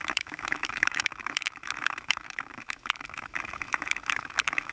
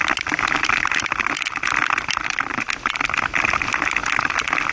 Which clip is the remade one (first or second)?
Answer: first